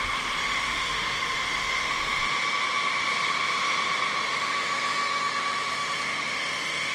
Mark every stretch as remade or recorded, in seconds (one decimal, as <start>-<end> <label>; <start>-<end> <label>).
0.0-0.4 recorded; 0.4-2.0 remade; 2.0-4.3 recorded; 4.3-6.9 remade